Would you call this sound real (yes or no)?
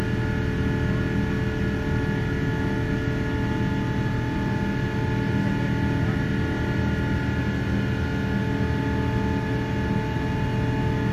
yes